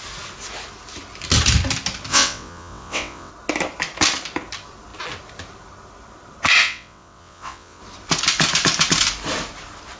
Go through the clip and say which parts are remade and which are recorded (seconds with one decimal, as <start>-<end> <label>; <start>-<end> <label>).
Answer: 0.0-2.1 recorded; 2.1-3.3 remade; 3.3-6.6 recorded; 6.6-7.8 remade; 7.8-10.0 recorded